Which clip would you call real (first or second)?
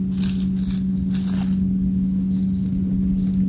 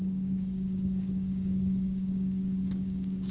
first